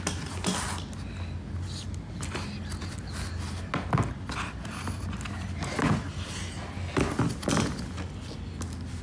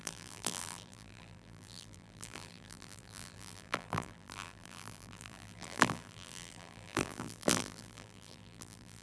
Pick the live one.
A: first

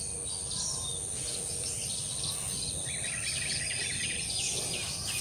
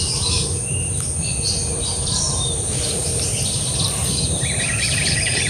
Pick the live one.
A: first